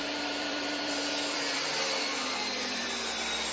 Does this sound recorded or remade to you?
remade